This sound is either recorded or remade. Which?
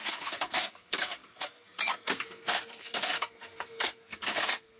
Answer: remade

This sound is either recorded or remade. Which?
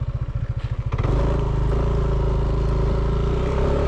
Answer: recorded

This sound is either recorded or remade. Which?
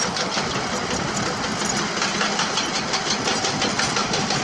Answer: recorded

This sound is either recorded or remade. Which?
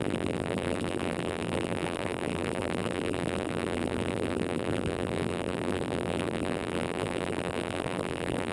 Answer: remade